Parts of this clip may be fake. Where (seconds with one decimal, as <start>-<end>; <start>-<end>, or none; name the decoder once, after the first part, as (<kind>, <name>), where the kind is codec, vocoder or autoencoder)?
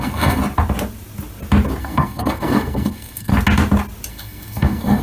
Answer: 0.0-0.4 (codec, SNAC); 1.8-3.3; 4.1-5.0